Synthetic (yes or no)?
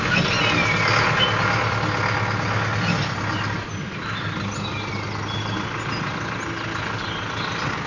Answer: no